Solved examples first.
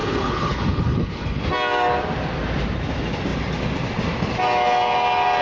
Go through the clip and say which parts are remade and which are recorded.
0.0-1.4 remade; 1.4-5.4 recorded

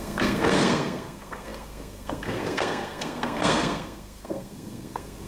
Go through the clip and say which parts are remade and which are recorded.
0.0-5.3 remade

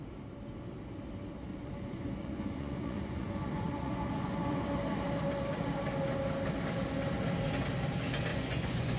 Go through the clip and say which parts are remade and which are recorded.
0.0-1.5 recorded; 1.5-4.6 remade; 4.6-8.3 recorded; 8.3-9.0 remade

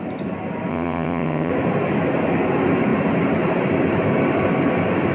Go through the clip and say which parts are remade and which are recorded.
0.0-0.7 recorded; 0.7-1.5 remade; 1.5-5.1 recorded

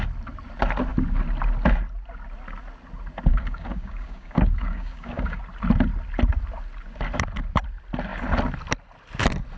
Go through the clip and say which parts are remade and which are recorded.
0.0-3.3 recorded; 3.3-5.4 remade; 5.4-9.6 recorded

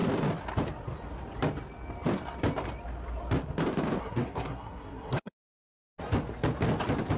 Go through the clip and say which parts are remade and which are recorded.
0.0-4.0 recorded; 4.0-5.9 remade; 5.9-7.2 recorded

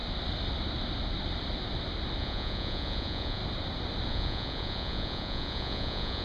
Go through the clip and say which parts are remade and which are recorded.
0.0-2.2 recorded; 2.2-3.4 remade; 3.4-4.1 recorded; 4.1-6.2 remade

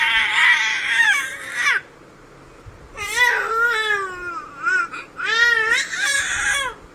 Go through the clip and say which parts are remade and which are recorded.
0.0-0.7 recorded; 0.7-1.2 remade; 1.2-6.9 recorded